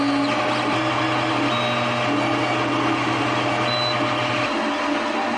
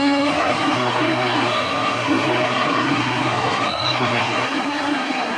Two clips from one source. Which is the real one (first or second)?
first